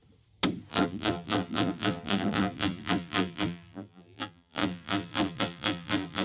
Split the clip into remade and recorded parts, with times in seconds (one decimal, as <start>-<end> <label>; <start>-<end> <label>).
0.0-0.7 recorded; 0.7-6.2 remade